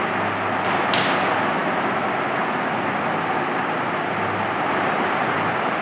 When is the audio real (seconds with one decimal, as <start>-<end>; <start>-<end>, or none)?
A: 0.0-5.8